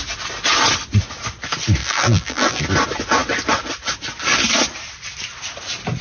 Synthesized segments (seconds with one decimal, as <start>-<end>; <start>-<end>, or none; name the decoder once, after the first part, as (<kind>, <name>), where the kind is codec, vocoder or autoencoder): 1.8-2.6 (vocoder, BigVGAN v2)